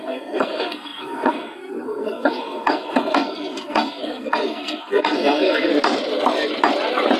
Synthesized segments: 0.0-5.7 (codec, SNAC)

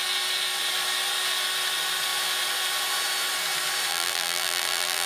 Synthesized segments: 3.9-5.1 (vocoder, BigVGAN v2)

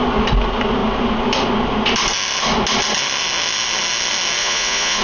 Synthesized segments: 4.4-5.0 (vocoder, Vocos)

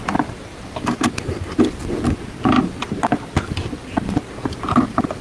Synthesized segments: 0.5-1.1 (vocoder, BigVGAN v2)

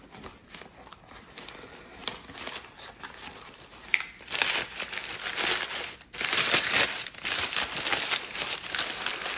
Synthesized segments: none

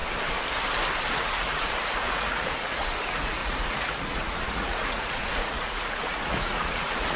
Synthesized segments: 1.1-7.2 (vocoder, Vocos)

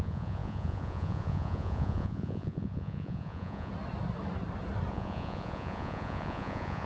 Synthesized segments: 0.0-3.7 (vocoder, Vocos); 4.9-6.9